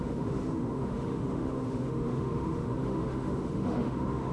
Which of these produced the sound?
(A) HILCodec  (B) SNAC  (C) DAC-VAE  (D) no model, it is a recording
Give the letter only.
C